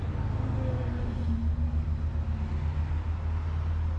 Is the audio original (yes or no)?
yes